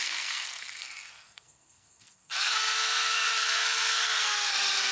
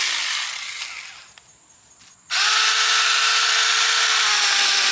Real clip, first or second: second